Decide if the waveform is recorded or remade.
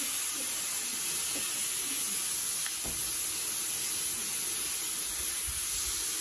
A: recorded